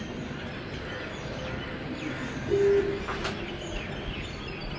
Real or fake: real